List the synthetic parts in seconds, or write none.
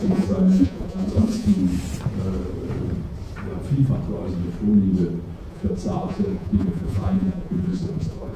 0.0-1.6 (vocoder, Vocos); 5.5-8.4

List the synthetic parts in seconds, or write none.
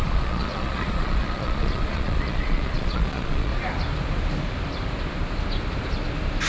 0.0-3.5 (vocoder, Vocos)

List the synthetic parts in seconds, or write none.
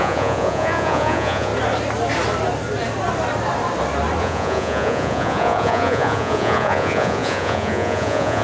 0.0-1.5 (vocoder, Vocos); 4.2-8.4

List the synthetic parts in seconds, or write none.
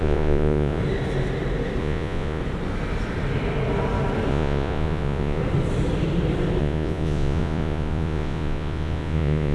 0.0-0.8 (vocoder, Vocos); 1.8-2.4; 4.3-5.4; 6.6-9.5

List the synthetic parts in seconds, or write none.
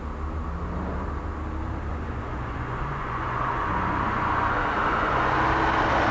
1.9-5.3 (vocoder, Vocos)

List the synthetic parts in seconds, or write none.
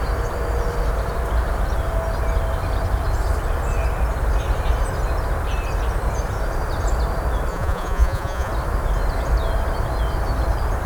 7.5-8.5 (vocoder, Vocos)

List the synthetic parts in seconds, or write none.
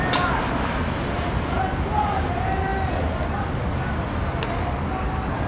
none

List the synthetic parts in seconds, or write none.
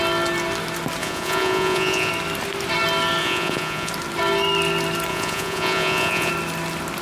1.0-2.1 (vocoder, Vocos); 3.2-3.9; 5.1-6.3